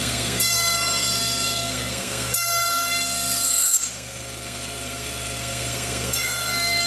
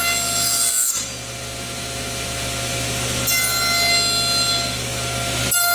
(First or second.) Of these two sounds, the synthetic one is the first